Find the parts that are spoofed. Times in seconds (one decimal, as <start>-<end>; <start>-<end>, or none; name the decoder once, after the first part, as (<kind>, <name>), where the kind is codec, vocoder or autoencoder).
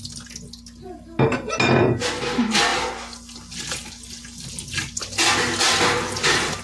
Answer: none